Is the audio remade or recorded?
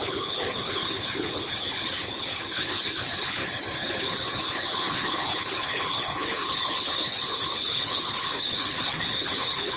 remade